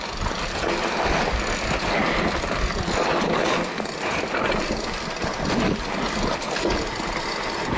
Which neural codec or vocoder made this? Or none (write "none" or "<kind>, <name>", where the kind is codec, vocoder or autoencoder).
none